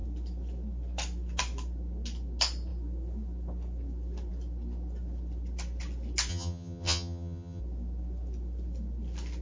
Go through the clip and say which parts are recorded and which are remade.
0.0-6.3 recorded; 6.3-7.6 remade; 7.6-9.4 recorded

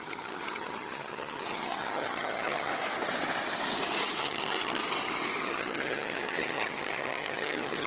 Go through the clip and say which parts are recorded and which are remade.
0.0-2.7 remade; 2.7-4.2 recorded; 4.2-4.8 remade; 4.8-5.4 recorded; 5.4-7.9 remade

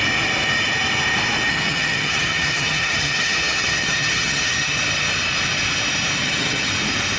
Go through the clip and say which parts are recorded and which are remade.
0.0-1.5 recorded; 1.5-4.8 remade; 4.8-6.2 recorded; 6.2-6.7 remade; 6.7-7.2 recorded

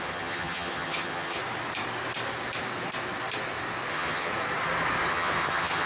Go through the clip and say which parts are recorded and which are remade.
0.0-1.4 remade; 1.4-3.9 recorded; 3.9-4.3 remade; 4.3-5.1 recorded; 5.1-5.9 remade

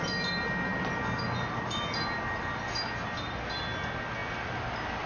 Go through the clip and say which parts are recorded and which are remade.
0.0-5.1 recorded

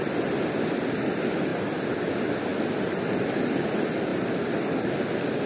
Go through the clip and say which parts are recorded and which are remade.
0.0-5.5 recorded

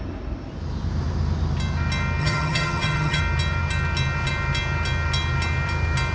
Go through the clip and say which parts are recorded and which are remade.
0.0-2.2 recorded; 2.2-3.2 remade; 3.2-6.1 recorded